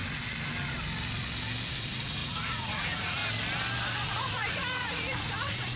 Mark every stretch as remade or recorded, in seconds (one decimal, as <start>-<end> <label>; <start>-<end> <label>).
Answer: 0.0-1.8 recorded; 1.8-3.2 remade; 3.2-4.1 recorded; 4.1-5.8 remade